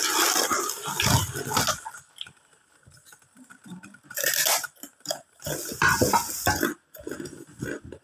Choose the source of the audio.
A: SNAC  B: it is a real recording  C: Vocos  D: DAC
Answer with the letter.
B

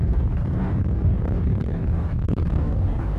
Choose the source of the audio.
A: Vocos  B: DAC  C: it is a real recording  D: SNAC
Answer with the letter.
B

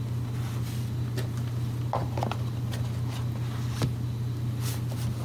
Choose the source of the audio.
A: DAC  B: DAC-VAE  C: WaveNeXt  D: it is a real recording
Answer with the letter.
D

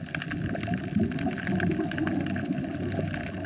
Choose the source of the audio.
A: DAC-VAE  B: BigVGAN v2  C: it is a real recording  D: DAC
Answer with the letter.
C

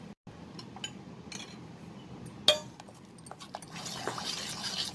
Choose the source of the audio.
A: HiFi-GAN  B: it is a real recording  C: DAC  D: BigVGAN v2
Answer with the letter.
B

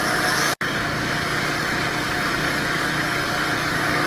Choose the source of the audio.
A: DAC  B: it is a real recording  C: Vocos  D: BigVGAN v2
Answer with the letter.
A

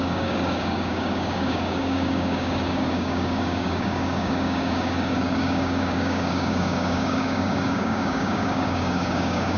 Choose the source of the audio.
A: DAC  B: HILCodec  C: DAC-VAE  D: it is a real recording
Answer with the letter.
A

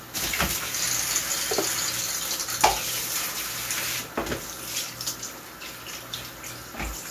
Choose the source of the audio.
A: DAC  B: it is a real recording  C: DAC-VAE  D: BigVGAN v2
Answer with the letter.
B